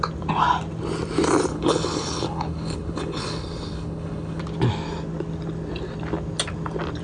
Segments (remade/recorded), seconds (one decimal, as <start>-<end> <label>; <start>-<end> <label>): 0.0-1.5 recorded; 1.5-4.4 remade; 4.4-7.0 recorded